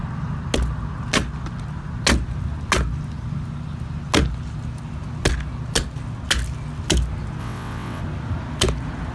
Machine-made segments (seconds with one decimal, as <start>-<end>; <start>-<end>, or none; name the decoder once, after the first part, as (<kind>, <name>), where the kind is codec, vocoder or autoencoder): 7.4-8.0 (vocoder, WaveNeXt)